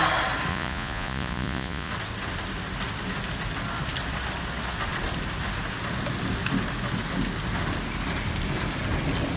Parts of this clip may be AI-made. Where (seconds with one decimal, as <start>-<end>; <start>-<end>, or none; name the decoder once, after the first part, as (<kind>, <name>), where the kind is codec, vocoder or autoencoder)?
0.5-1.9 (vocoder, Vocos)